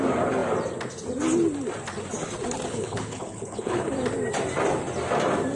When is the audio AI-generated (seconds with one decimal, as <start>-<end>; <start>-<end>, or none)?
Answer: 2.7-3.9